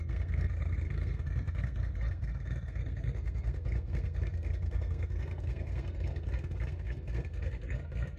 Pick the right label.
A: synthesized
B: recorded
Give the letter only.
A